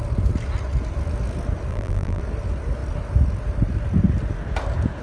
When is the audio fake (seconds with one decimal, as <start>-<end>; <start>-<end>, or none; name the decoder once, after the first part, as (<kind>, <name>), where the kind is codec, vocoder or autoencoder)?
1.7-2.2 (vocoder, BigVGAN v2)